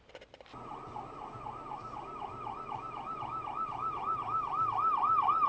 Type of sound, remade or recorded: recorded